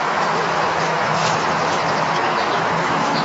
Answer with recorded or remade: remade